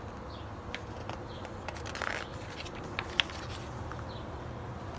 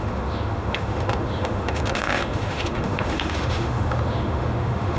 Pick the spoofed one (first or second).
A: second